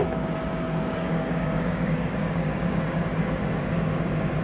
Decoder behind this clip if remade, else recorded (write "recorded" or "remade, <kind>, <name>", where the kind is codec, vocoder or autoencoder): remade, codec, DAC